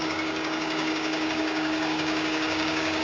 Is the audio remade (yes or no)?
yes